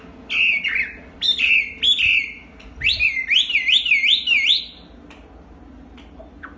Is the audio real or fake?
real